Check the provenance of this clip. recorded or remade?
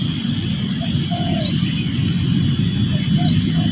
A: recorded